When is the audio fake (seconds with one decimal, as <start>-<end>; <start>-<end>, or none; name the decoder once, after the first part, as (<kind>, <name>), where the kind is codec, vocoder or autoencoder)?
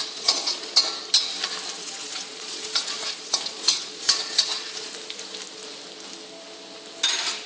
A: 0.0-0.7 (vocoder, Vocos); 1.8-4.9